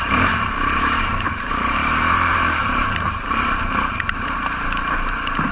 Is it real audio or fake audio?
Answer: fake